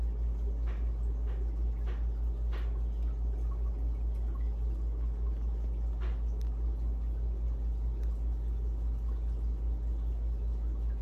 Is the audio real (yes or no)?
yes